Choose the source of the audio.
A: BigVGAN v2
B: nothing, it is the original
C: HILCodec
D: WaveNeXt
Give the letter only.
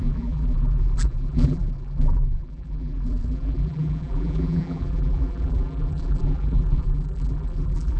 A